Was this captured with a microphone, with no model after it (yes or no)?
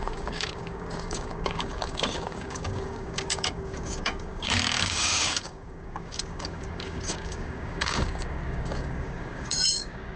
no